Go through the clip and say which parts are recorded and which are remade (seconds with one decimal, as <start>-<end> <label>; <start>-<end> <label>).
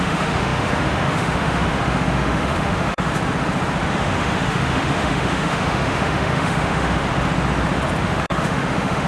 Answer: 0.0-3.1 remade; 3.1-3.9 recorded; 3.9-7.0 remade; 7.0-8.0 recorded; 8.0-9.1 remade